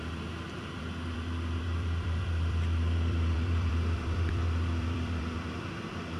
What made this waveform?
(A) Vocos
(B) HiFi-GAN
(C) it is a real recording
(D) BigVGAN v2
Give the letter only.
D